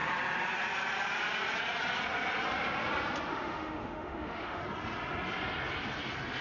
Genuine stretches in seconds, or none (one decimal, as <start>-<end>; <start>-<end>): 0.0-3.3; 4.6-6.4